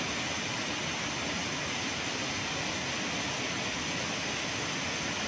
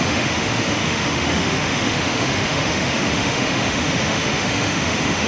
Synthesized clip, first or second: second